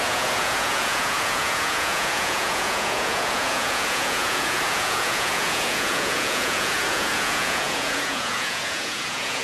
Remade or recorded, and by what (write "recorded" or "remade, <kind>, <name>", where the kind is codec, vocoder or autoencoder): remade, vocoder, Vocos